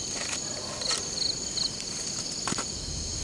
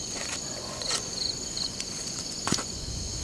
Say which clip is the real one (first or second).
first